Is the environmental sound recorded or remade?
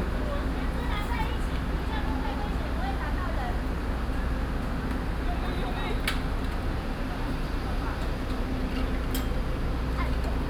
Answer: recorded